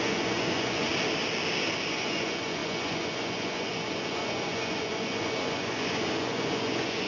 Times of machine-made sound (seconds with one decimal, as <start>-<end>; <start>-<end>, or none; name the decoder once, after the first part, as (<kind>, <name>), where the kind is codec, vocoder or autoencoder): 0.0-0.9 (vocoder, Vocos); 1.9-7.1